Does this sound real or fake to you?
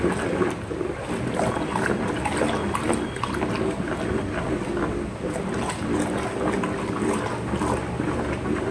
real